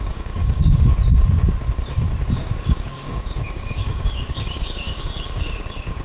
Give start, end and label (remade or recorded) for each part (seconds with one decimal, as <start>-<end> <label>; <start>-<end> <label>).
0.0-0.9 remade; 0.9-2.3 recorded; 2.3-6.0 remade

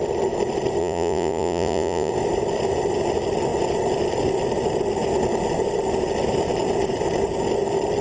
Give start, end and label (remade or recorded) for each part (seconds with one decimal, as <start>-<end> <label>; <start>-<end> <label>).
0.0-0.8 recorded; 0.8-2.1 remade; 2.1-8.0 recorded

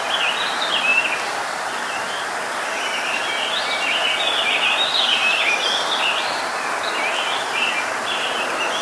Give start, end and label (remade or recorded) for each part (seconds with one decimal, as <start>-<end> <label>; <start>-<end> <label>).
0.0-8.8 recorded

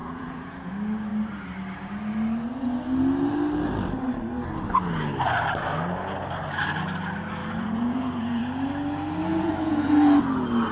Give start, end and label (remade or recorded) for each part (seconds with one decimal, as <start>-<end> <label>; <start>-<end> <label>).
0.0-0.7 remade; 0.7-7.4 recorded; 7.4-8.4 remade; 8.4-9.3 recorded; 9.3-9.9 remade; 9.9-10.7 recorded

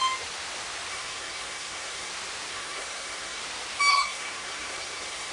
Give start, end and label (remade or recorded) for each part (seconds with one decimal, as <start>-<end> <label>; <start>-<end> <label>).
0.0-0.9 recorded; 0.9-2.1 remade; 2.1-2.5 recorded; 2.5-3.4 remade; 3.4-3.9 recorded; 3.9-5.3 remade

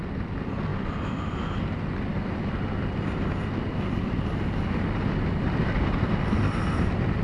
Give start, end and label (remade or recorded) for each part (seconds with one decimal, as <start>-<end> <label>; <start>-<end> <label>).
0.0-7.2 recorded

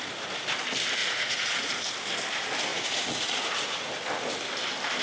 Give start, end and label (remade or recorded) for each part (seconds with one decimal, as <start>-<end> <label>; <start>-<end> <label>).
0.0-1.0 recorded; 1.0-1.7 remade; 1.7-2.7 recorded; 2.7-3.9 remade; 3.9-5.0 recorded